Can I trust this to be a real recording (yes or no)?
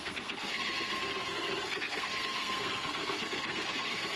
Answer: no